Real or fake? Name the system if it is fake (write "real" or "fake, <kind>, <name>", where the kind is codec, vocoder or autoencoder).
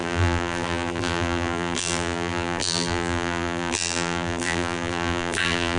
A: fake, vocoder, BigVGAN v2